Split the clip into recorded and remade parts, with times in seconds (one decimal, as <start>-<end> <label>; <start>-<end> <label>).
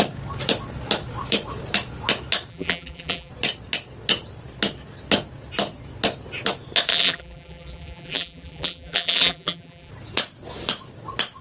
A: 0.0-2.5 recorded; 2.5-3.3 remade; 3.3-6.9 recorded; 6.9-9.9 remade; 9.9-11.4 recorded